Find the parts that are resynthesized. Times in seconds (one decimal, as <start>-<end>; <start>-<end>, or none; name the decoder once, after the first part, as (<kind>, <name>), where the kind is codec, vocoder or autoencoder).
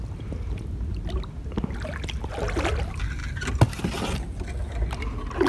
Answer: none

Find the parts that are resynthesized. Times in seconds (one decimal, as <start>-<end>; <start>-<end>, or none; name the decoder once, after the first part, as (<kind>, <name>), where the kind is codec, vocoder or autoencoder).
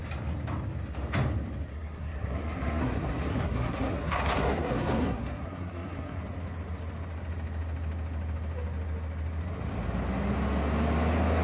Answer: 1.7-6.2 (codec, SNAC)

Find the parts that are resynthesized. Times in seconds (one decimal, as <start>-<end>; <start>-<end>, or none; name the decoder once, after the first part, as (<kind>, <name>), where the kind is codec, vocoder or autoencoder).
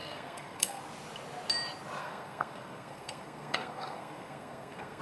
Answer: 0.0-0.8 (codec, SNAC); 2.0-5.0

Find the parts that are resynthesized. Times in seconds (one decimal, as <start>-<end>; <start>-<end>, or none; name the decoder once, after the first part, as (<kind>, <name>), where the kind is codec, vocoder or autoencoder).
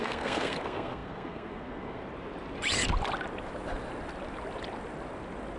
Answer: 0.0-2.0 (codec, SNAC)